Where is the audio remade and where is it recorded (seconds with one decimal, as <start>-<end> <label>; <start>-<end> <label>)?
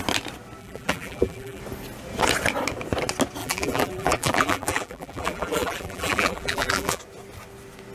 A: 0.0-0.6 recorded; 0.6-1.6 remade; 1.6-3.4 recorded; 3.4-7.0 remade; 7.0-7.9 recorded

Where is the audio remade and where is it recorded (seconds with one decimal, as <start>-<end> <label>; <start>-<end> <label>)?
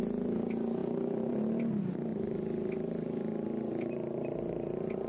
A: 0.0-2.1 recorded; 2.1-5.1 remade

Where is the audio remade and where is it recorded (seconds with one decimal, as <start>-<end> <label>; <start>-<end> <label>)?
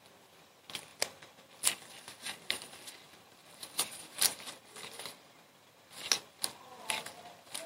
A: 0.0-3.4 recorded; 3.4-4.6 remade; 4.6-7.7 recorded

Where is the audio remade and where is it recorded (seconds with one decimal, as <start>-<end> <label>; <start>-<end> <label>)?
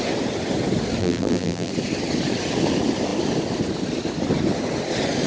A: 0.0-1.0 recorded; 1.0-1.7 remade; 1.7-5.3 recorded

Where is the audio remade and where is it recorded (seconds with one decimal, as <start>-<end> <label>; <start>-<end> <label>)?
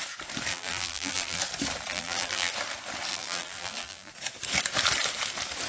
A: 0.0-0.5 recorded; 0.5-1.4 remade; 1.4-1.9 recorded; 1.9-2.5 remade; 2.5-3.1 recorded; 3.1-4.1 remade; 4.1-5.7 recorded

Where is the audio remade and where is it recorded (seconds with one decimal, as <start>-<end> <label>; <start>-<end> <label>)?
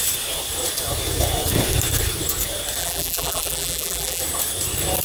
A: 0.0-2.8 recorded; 2.8-4.2 remade; 4.2-5.0 recorded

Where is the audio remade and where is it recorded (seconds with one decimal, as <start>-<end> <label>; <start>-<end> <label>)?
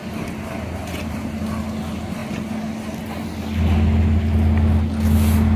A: 0.0-0.8 recorded; 0.8-2.2 remade; 2.2-5.6 recorded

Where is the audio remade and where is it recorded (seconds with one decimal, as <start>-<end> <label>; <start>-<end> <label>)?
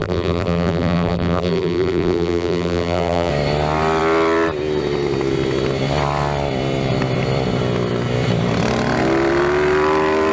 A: 0.0-3.3 remade; 3.3-10.3 recorded